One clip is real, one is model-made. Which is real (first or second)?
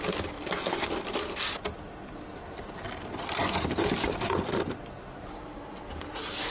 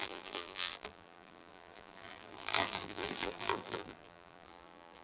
first